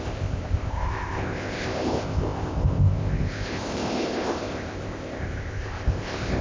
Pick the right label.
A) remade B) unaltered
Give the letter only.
A